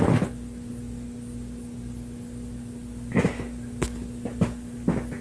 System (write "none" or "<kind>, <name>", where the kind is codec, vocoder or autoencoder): none